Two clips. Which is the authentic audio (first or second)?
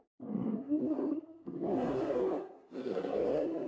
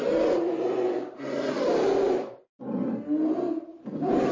second